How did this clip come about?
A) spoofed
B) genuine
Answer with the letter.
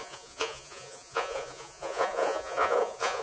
A